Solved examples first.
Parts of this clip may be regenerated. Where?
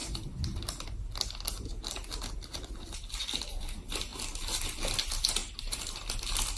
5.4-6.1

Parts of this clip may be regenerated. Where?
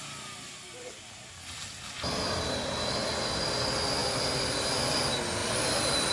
4.0-4.7; 5.4-6.1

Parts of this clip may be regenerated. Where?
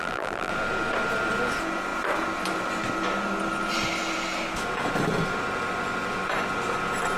0.0-0.5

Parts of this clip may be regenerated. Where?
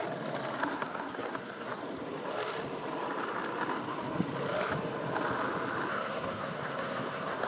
0.6-1.8; 5.9-7.5